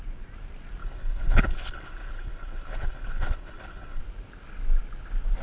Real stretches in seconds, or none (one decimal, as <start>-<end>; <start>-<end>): 0.0-0.8; 4.0-5.4